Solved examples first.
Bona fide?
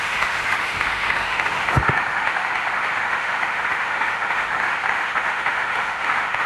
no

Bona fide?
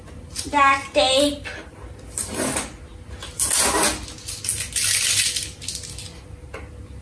yes